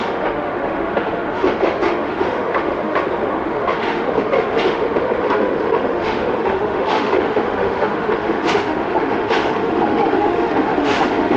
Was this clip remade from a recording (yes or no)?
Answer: yes